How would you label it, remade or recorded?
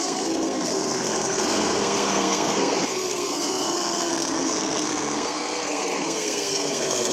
remade